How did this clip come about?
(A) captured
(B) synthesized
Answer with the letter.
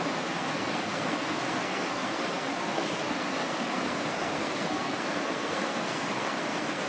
B